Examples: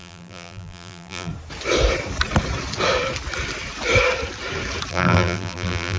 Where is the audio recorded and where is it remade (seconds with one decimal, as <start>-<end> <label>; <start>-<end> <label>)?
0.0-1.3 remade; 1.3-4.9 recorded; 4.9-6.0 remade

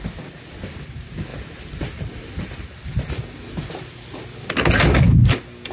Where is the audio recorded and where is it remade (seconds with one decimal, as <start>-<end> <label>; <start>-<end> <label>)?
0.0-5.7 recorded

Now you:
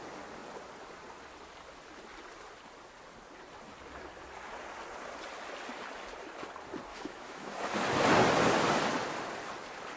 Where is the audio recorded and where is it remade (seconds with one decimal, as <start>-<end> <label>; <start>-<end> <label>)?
0.0-6.9 recorded; 6.9-7.6 remade; 7.6-10.0 recorded